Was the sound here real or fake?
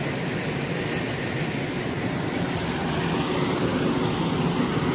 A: real